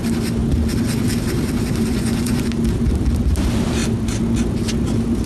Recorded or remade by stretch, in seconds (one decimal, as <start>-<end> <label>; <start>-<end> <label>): 0.0-1.9 recorded; 1.9-2.5 remade; 2.5-5.3 recorded

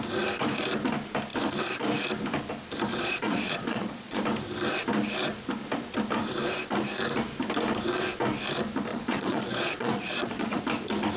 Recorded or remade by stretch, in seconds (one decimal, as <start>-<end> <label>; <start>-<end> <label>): 0.0-2.9 recorded; 2.9-4.2 remade; 4.2-8.9 recorded; 8.9-10.6 remade; 10.6-11.2 recorded